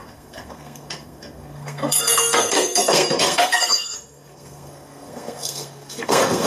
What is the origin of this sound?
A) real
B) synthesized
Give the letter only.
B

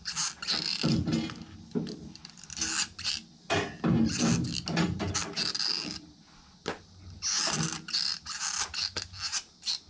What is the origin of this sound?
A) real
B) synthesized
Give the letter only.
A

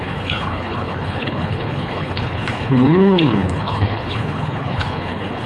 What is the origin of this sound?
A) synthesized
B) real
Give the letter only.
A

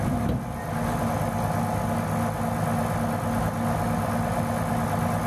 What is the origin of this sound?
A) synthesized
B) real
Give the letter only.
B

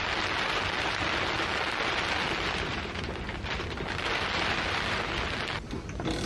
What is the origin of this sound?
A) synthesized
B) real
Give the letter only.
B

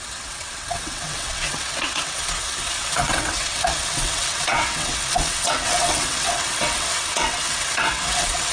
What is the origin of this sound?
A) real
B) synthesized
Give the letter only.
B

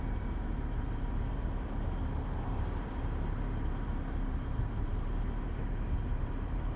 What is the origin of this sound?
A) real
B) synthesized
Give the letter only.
B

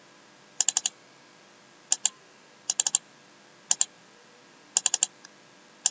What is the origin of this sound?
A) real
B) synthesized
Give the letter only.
A